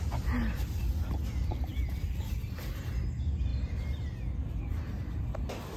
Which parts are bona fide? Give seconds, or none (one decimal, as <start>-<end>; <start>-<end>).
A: 0.0-5.8